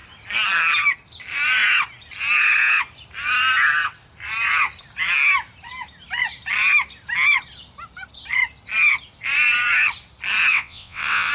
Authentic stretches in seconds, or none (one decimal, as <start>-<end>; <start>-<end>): 0.0-10.5